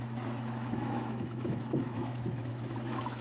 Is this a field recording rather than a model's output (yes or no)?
no